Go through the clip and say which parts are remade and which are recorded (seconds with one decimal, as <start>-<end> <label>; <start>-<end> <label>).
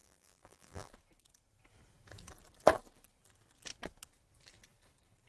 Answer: 0.0-0.9 remade; 0.9-5.3 recorded